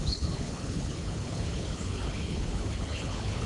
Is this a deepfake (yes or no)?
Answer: yes